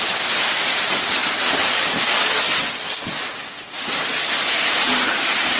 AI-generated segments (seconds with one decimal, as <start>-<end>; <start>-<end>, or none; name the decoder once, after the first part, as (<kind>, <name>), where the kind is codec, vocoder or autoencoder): none